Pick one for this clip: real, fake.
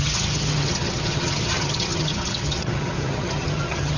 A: fake